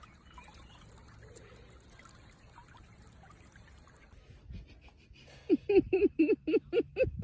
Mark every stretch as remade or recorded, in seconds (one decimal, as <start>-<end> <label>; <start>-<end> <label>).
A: 0.0-7.2 recorded